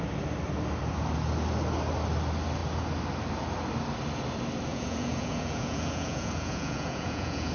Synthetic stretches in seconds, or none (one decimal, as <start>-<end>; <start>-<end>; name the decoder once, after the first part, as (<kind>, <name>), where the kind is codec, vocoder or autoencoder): 4.7-7.5 (vocoder, Vocos)